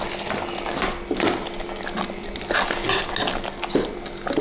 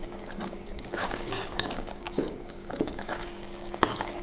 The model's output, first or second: second